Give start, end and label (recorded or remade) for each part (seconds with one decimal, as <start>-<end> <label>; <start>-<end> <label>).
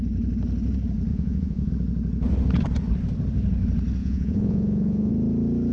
0.0-1.1 recorded; 1.1-1.7 remade; 1.7-4.0 recorded; 4.0-5.1 remade; 5.1-5.7 recorded